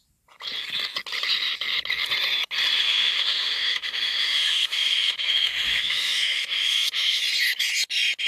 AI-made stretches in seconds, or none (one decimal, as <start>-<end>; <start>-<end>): 2.8-7.2